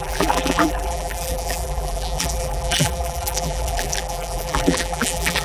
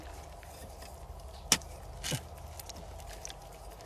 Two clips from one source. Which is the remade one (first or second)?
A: first